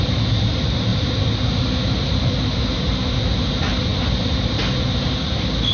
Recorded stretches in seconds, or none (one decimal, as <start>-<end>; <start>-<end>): 0.0-5.7